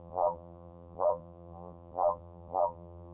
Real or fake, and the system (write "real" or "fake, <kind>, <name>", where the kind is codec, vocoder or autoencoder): fake, vocoder, BigVGAN v2